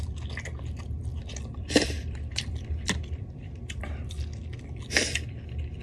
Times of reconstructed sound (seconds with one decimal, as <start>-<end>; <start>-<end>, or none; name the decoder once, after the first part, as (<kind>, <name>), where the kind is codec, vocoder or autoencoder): 1.1-4.1 (vocoder, BigVGAN v2)